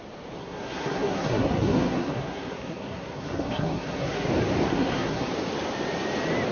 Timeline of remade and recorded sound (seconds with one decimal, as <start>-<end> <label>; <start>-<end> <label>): 0.0-0.4 recorded; 0.4-4.3 remade; 4.3-4.7 recorded; 4.7-5.3 remade; 5.3-6.5 recorded